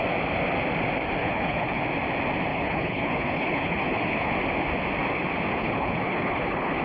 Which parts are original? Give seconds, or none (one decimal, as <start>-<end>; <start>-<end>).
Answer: 0.0-1.2; 1.8-2.5; 4.3-5.6